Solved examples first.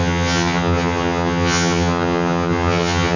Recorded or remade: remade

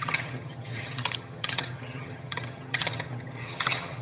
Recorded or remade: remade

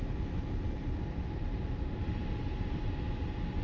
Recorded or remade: recorded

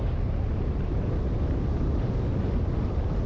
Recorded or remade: recorded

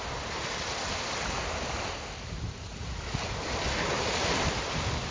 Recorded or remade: recorded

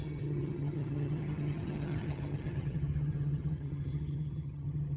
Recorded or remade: remade